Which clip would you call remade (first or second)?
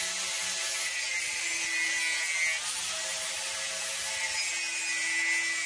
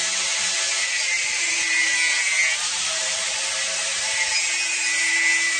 second